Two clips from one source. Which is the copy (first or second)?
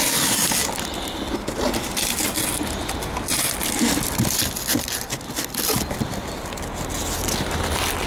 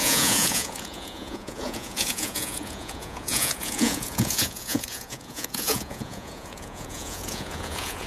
second